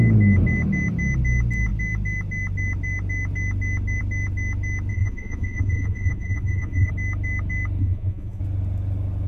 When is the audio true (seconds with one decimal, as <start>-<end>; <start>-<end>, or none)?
0.0-4.9; 6.9-7.8; 8.4-9.3